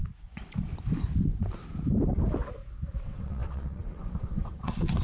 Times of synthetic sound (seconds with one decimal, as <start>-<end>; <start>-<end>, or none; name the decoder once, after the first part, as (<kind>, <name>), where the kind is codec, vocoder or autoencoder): 3.0-5.0 (vocoder, WaveNeXt)